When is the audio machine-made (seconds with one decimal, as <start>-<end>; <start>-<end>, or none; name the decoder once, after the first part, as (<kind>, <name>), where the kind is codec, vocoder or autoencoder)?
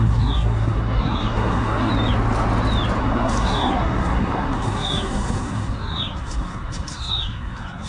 0.0-1.9 (codec, SNAC); 3.0-7.9